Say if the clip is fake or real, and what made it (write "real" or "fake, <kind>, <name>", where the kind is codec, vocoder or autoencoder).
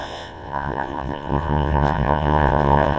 fake, vocoder, WaveNeXt